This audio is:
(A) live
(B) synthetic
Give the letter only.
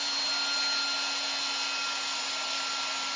A